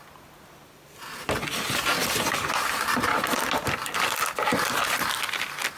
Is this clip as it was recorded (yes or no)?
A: yes